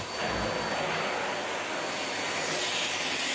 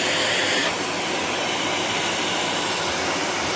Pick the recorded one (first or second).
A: first